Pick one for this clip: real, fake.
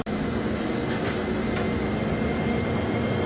real